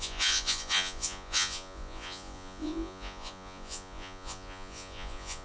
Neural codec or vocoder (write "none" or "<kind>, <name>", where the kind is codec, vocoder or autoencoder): vocoder, Vocos